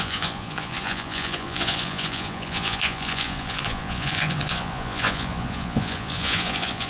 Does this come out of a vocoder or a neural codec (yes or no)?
yes